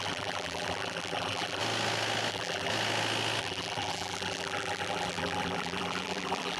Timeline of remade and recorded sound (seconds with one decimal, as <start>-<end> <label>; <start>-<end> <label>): 0.0-1.6 remade; 1.6-2.3 recorded; 2.3-2.7 remade; 2.7-3.4 recorded; 3.4-6.6 remade